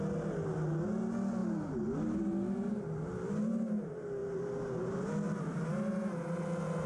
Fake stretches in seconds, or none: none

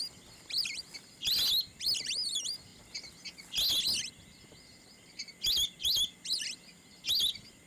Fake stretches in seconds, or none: none

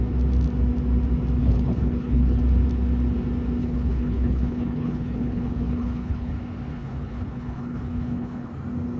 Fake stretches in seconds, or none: 1.4-2.4 (codec, HILCodec); 3.6-6.3; 6.7-8.5

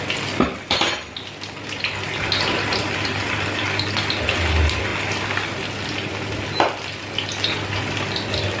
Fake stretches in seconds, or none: none

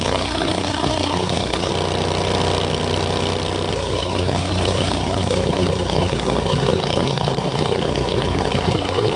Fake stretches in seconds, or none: 0.0-1.7 (codec, SNAC); 3.7-9.2